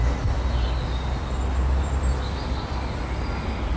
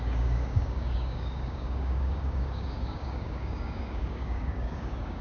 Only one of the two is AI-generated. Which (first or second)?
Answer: second